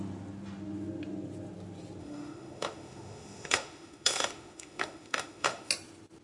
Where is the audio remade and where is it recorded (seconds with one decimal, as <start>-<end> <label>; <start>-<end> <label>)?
0.0-2.0 recorded; 2.0-5.7 remade; 5.7-6.2 recorded